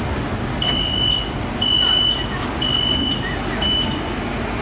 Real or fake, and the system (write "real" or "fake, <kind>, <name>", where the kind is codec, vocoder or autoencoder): real